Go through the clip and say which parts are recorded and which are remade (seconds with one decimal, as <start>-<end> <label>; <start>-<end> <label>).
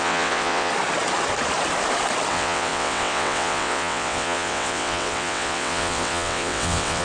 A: 0.0-0.7 remade; 0.7-2.3 recorded; 2.3-7.0 remade